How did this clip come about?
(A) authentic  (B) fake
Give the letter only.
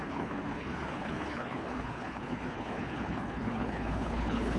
B